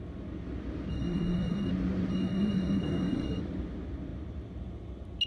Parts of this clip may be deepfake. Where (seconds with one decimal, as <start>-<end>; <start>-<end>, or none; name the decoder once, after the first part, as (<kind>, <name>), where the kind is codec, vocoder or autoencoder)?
0.9-1.7 (codec, SNAC); 2.1-3.4